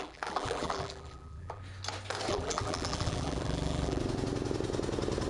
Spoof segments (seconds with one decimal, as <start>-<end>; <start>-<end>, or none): 0.0-1.6; 2.3-4.0